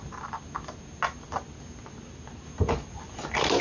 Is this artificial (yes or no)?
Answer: no